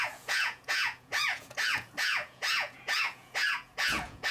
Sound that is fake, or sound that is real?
fake